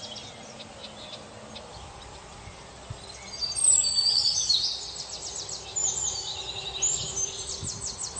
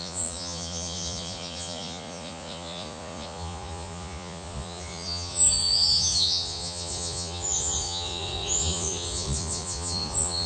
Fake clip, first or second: second